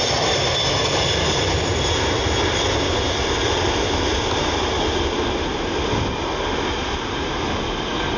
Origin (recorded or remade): recorded